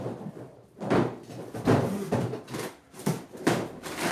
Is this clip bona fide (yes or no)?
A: no